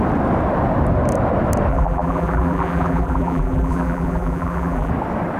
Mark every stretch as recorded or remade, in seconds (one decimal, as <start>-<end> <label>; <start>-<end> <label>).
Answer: 0.0-1.7 recorded; 1.7-4.9 remade; 4.9-5.4 recorded